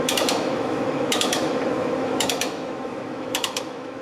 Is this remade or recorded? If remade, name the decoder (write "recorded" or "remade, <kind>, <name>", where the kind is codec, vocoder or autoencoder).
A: remade, autoencoder, DAC-VAE